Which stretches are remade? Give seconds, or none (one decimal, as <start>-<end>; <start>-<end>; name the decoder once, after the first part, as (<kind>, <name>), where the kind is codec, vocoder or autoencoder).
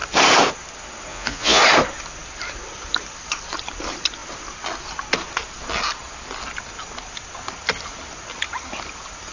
1.1-1.6 (vocoder, Vocos)